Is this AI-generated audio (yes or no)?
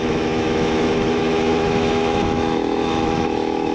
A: yes